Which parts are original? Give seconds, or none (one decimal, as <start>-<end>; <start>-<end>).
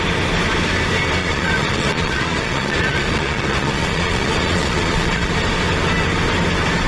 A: 0.0-1.2; 5.3-6.9